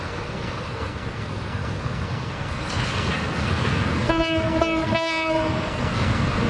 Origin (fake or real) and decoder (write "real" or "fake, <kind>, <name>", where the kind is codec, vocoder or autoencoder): fake, codec, SNAC